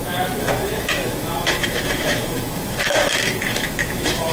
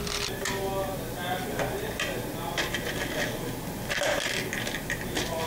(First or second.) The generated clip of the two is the first